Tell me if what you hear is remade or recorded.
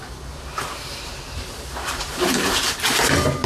remade